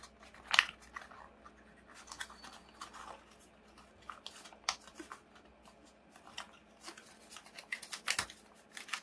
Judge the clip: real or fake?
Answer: real